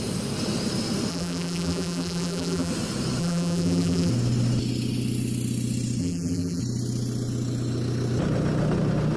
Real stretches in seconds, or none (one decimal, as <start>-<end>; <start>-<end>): 0.0-1.1; 2.7-3.2; 4.1-6.0; 6.6-9.2